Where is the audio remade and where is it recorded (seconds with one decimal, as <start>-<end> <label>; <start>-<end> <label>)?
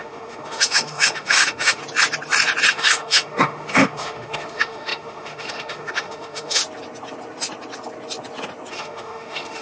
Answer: 0.0-1.8 remade; 1.8-2.7 recorded; 2.7-6.6 remade; 6.6-8.7 recorded; 8.7-9.6 remade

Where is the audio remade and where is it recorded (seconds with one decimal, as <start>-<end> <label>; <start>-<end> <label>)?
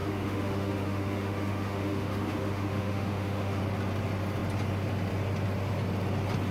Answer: 0.0-3.6 remade; 3.6-6.5 recorded